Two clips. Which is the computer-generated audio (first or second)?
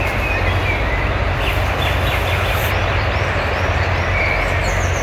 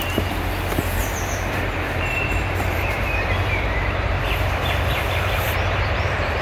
second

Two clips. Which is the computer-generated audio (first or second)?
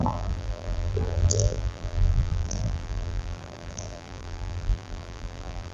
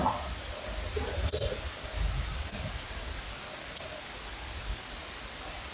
first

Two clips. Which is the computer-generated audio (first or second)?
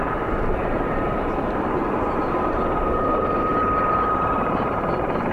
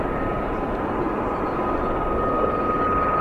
first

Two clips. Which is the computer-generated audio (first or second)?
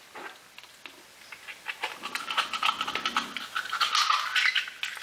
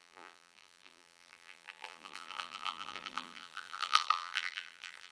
second